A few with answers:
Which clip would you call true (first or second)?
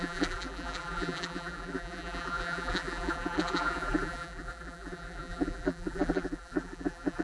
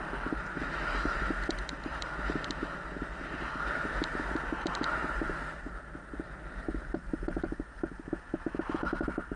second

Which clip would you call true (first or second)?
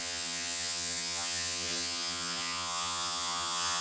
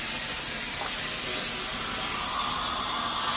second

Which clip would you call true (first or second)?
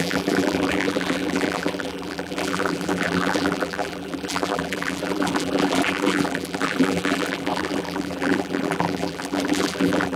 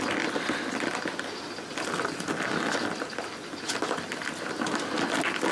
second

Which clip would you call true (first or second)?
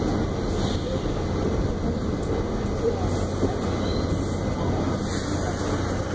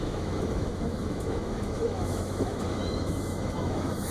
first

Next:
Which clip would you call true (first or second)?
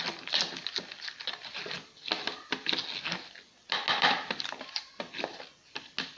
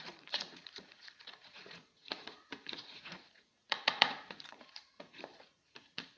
first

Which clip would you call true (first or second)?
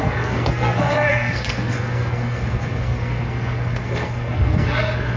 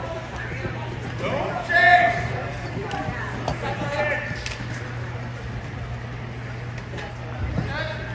second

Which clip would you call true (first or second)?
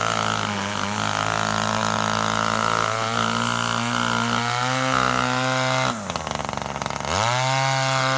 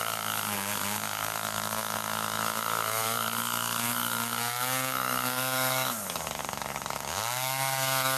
first